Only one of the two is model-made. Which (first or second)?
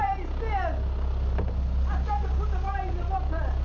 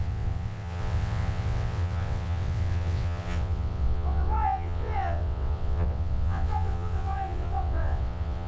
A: second